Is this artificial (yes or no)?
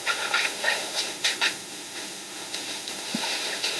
yes